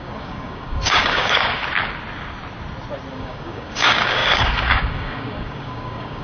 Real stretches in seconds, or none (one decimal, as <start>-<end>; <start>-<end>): 1.6-3.1